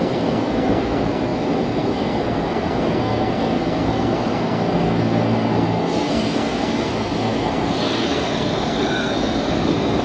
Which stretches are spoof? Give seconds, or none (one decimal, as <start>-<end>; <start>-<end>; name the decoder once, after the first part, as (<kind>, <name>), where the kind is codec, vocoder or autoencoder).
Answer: 0.0-10.0 (codec, SNAC)